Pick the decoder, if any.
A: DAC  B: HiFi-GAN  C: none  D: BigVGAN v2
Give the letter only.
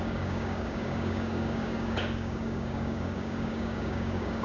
A